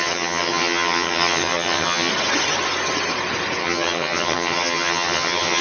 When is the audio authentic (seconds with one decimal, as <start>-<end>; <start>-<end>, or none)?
2.1-3.6